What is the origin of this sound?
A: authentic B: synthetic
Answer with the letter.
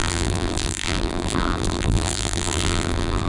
B